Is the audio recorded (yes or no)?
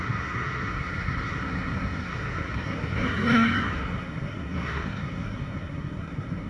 no